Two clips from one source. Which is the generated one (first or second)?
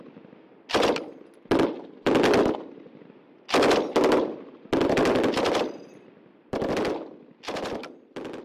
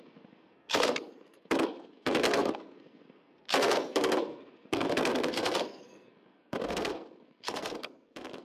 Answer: second